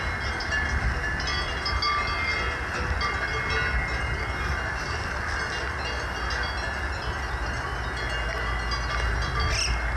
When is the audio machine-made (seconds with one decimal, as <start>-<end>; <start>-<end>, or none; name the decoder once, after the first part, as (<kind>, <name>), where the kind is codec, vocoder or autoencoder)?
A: none